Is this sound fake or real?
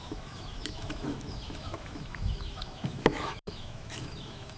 fake